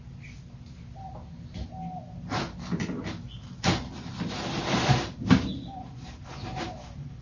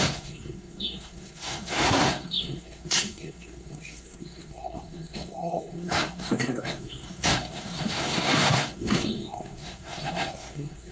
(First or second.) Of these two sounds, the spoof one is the second